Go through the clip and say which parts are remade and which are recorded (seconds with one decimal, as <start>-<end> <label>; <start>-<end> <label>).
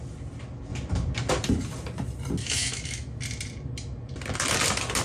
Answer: 0.0-2.4 recorded; 2.4-3.2 remade; 3.2-5.0 recorded